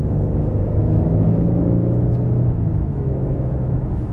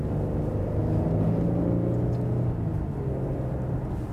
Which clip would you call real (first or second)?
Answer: second